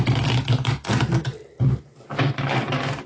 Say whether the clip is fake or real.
real